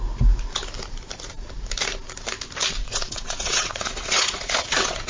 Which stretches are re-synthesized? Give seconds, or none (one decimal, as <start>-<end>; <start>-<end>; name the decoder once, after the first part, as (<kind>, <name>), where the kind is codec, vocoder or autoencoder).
2.8-5.1 (vocoder, WaveNeXt)

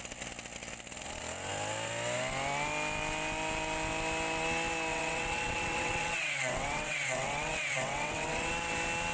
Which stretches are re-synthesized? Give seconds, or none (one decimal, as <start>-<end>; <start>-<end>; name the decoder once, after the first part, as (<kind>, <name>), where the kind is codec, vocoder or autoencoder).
4.9-8.5 (vocoder, WaveNeXt)

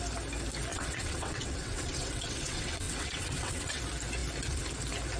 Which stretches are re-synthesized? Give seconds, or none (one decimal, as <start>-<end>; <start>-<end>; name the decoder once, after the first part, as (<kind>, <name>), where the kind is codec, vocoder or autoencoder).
0.7-3.8 (vocoder, WaveNeXt)

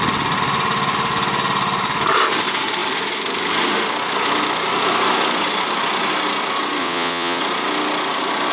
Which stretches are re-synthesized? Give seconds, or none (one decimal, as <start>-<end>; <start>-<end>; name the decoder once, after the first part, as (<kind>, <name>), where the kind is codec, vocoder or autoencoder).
6.8-7.4 (vocoder, WaveNeXt)

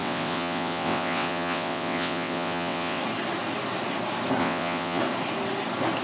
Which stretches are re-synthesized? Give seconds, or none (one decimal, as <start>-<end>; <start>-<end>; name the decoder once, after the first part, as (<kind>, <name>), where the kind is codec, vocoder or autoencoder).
0.0-3.0 (vocoder, WaveNeXt); 4.4-5.0

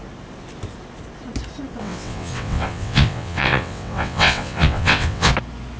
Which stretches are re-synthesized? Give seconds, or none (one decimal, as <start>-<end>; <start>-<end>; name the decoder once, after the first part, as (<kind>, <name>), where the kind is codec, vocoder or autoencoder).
1.8-5.3 (vocoder, WaveNeXt)

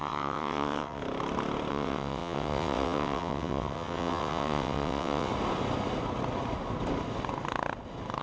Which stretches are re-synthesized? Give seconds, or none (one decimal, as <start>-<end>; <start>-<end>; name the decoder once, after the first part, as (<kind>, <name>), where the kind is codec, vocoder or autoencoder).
0.0-1.0 (vocoder, WaveNeXt); 1.7-5.3

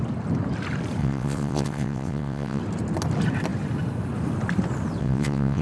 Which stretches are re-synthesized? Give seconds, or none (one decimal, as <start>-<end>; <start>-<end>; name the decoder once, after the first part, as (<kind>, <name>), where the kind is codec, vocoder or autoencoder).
1.0-2.6 (vocoder, WaveNeXt); 5.0-5.6